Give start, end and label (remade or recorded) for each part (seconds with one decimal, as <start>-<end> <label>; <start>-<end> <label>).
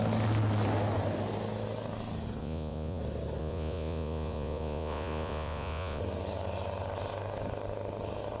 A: 0.0-2.4 recorded; 2.4-3.0 remade; 3.0-3.4 recorded; 3.4-6.0 remade; 6.0-8.4 recorded